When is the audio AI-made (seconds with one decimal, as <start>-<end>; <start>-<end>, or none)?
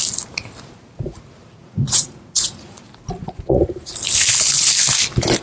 1.6-2.8; 3.2-3.9